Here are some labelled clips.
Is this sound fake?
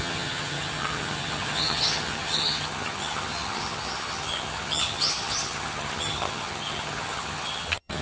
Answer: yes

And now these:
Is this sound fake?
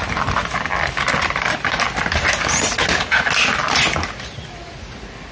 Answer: no